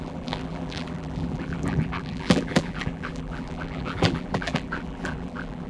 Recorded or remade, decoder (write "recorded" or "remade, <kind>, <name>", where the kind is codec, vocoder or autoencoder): remade, vocoder, BigVGAN v2